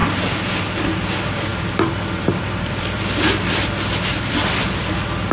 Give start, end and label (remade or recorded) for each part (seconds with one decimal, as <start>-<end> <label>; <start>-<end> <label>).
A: 0.0-1.5 recorded; 1.5-4.7 remade; 4.7-5.3 recorded